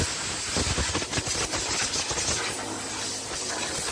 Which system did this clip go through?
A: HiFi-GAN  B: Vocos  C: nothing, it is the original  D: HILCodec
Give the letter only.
C